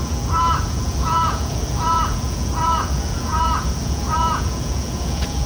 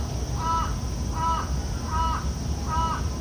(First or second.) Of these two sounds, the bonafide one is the second